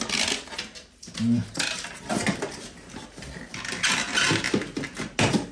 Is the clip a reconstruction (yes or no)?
no